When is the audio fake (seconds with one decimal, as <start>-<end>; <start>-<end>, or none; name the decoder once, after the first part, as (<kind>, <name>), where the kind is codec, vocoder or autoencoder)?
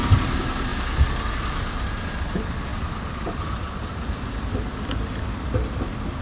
2.7-6.2 (vocoder, BigVGAN v2)